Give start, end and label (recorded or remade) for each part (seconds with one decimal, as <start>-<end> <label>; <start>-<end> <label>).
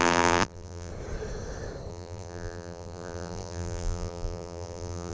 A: 0.0-0.9 remade; 0.9-1.9 recorded; 1.9-5.1 remade